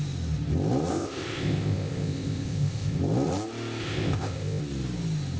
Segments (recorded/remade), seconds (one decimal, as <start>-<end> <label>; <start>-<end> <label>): 0.0-0.9 recorded; 0.9-3.0 remade; 3.0-3.8 recorded; 3.8-4.6 remade; 4.6-5.4 recorded